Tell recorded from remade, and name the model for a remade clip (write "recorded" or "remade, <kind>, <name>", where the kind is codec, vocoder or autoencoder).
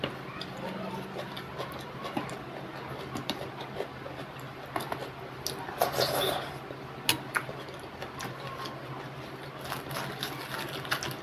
recorded